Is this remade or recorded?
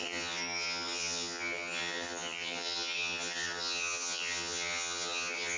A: remade